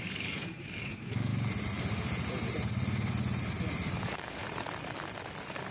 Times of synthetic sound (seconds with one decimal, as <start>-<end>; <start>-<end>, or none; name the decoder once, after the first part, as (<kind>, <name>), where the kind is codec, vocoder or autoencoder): 0.0-1.3 (codec, DAC); 4.0-4.4